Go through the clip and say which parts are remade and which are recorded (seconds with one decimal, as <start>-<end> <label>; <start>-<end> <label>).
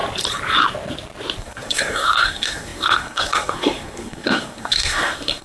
0.0-1.4 recorded; 1.4-5.4 remade